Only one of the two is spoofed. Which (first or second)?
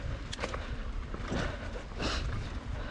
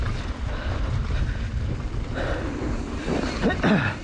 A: second